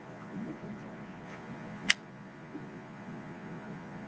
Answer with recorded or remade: remade